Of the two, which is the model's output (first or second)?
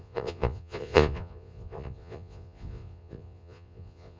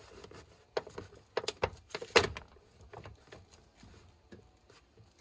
first